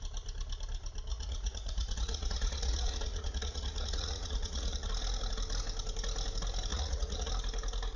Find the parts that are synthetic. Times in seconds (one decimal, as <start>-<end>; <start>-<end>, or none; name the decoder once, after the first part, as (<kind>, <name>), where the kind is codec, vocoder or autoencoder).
1.1-4.9 (vocoder, Vocos); 6.7-7.3

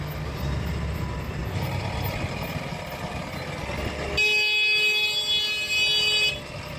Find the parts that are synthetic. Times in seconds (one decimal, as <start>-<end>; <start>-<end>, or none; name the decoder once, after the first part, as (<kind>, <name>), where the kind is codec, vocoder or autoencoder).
none

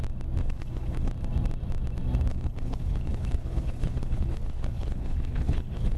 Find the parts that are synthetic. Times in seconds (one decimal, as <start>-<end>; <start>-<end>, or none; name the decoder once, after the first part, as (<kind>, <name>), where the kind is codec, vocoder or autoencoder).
0.4-1.1 (codec, HILCodec); 2.3-6.0

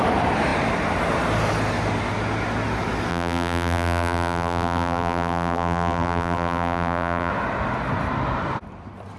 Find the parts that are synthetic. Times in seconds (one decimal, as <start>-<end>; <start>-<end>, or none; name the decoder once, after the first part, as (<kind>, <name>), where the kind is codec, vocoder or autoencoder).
3.1-7.3 (vocoder, BigVGAN v2)

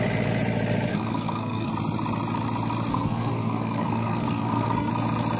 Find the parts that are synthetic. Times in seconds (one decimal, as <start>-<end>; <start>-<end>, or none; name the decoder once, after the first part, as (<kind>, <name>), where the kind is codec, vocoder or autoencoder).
0.9-1.7 (codec, SNAC); 2.9-4.9

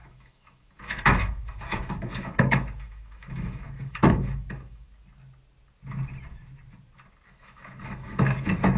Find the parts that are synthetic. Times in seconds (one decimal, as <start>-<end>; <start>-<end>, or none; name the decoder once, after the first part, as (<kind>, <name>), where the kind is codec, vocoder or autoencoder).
0.0-4.9 (autoencoder, DAC-VAE); 7.3-8.8

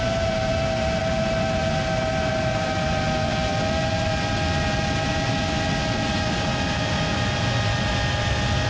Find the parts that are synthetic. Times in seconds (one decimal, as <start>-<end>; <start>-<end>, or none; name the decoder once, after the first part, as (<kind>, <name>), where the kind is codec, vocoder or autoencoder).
none